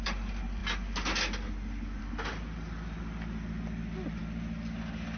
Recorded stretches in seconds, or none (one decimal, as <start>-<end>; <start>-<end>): 0.0-5.2